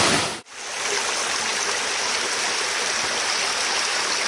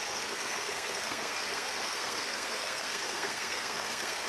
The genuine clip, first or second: first